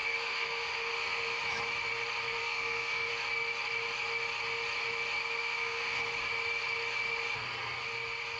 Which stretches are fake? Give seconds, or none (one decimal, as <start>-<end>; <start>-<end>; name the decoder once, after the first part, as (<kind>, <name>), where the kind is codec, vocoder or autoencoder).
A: 0.0-1.4 (codec, SNAC); 2.4-3.1; 5.2-6.0